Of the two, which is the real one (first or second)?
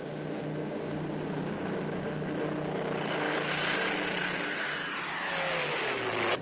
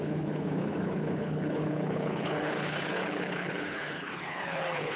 first